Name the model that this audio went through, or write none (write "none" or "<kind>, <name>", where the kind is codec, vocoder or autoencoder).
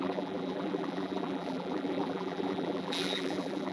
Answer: vocoder, BigVGAN v2